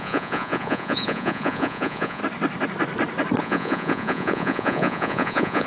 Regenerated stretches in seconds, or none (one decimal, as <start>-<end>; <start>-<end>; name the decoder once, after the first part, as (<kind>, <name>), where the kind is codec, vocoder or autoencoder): 0.0-2.2 (vocoder, Vocos); 3.4-5.7

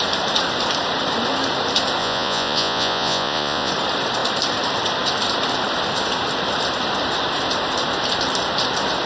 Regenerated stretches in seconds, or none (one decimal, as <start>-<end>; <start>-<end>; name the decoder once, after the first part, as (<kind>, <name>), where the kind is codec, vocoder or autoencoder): 2.0-3.7 (vocoder, Vocos)

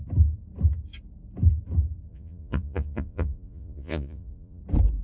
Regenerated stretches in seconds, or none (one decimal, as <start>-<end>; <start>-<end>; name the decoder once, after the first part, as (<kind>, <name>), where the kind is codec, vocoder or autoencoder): 2.1-4.6 (vocoder, Vocos)